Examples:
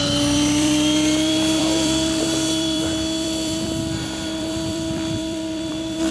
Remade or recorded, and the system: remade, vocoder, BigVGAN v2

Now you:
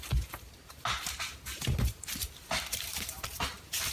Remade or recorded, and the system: remade, vocoder, BigVGAN v2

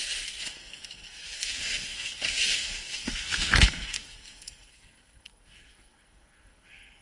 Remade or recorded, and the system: remade, codec, SNAC